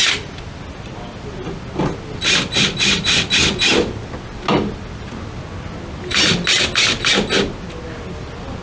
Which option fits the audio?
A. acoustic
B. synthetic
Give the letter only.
A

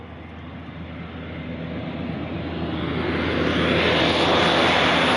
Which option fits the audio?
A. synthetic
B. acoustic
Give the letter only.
B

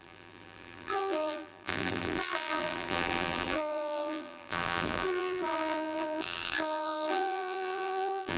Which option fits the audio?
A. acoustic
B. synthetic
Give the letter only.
B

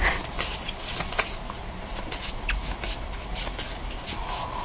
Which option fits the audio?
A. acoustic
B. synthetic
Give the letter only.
A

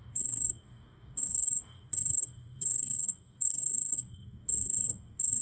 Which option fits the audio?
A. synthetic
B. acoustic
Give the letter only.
A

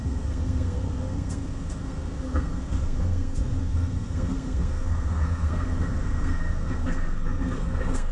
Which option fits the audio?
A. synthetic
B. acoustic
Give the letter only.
A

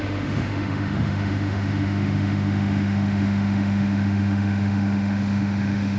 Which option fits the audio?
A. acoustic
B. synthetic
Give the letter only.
B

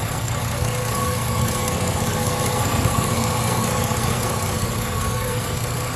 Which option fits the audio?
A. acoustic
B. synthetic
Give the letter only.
B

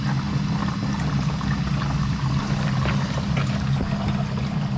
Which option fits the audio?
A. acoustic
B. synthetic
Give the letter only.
A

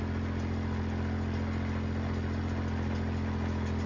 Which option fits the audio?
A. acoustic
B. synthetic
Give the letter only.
A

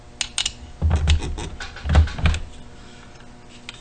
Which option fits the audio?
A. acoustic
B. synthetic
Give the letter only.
A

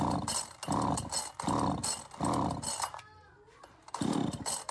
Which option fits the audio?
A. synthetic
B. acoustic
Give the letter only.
B